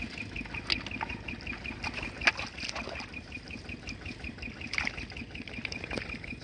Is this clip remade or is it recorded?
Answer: recorded